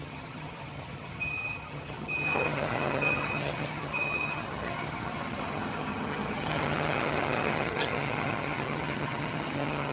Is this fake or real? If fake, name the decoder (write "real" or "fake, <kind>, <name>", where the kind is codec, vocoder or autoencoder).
fake, vocoder, HiFi-GAN